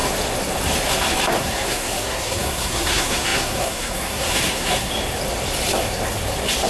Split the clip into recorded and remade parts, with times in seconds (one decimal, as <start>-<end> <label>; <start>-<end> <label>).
0.0-1.4 recorded; 1.4-4.9 remade; 4.9-6.7 recorded